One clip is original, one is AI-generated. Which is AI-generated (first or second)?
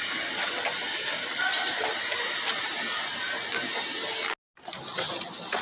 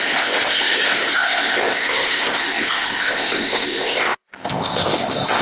second